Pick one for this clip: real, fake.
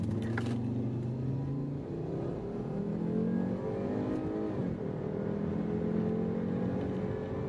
real